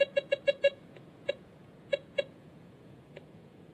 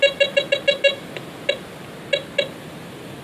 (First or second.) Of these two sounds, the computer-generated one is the first